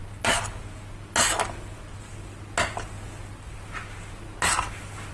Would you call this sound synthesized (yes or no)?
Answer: no